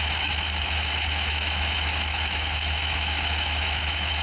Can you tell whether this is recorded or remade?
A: remade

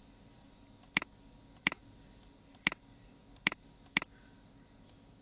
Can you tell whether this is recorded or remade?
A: recorded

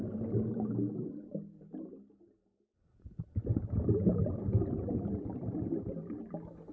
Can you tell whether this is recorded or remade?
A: recorded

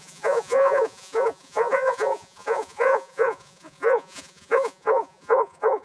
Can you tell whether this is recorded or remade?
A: remade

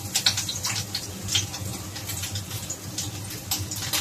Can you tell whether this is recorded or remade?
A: recorded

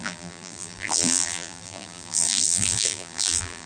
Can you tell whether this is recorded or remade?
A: remade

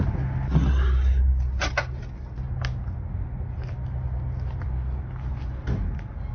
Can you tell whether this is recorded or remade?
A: recorded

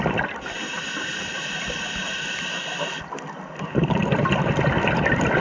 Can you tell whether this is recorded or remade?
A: recorded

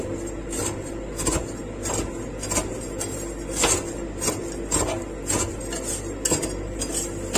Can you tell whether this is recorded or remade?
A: recorded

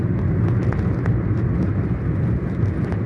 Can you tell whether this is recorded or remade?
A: recorded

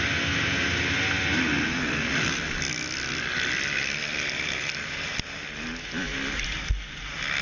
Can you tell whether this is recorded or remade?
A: recorded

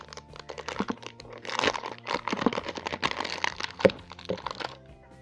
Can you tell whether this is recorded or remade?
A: recorded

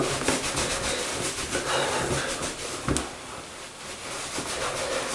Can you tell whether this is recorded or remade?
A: recorded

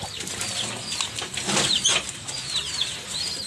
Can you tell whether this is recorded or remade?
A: recorded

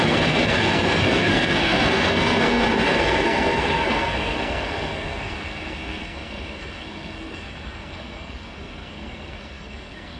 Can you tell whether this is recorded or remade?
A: remade